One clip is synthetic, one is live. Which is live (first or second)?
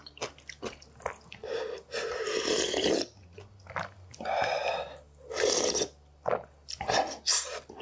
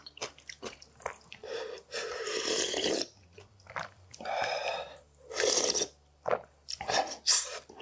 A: first